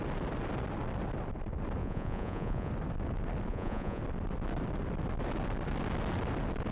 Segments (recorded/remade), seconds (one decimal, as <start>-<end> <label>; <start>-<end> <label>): 0.0-1.8 recorded; 1.8-2.7 remade; 2.7-3.5 recorded; 3.5-4.0 remade; 4.0-6.7 recorded